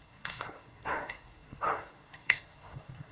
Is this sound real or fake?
fake